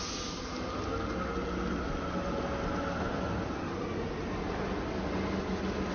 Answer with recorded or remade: recorded